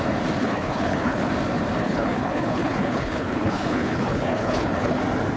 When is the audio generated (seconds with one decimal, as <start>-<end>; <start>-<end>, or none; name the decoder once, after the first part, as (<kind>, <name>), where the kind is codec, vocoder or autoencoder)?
0.4-1.3 (codec, HILCodec); 1.8-5.0